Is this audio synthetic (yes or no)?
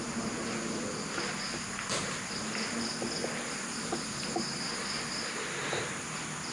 no